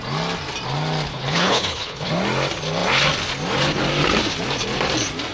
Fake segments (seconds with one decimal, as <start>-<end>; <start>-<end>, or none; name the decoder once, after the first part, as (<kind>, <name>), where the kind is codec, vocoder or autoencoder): 1.1-2.1 (codec, HILCodec)